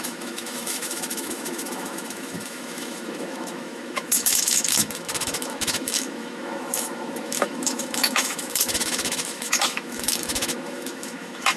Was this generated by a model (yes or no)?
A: yes